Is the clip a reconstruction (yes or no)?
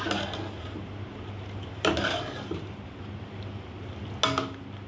no